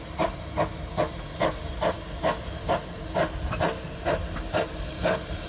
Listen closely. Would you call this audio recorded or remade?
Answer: recorded